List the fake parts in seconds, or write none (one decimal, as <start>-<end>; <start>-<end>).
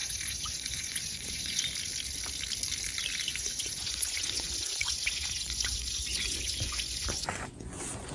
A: 0.0-1.6; 3.3-8.1